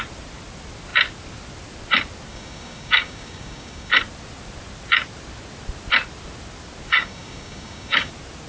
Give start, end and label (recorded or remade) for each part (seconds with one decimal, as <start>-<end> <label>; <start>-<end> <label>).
0.0-2.3 recorded; 2.3-3.9 remade; 3.9-6.9 recorded; 6.9-8.1 remade; 8.1-8.5 recorded